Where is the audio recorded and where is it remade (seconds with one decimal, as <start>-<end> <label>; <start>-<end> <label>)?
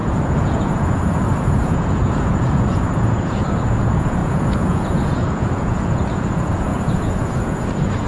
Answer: 0.0-8.1 remade